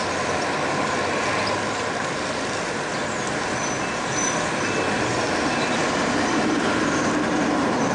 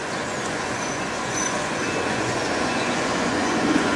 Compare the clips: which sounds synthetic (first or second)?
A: second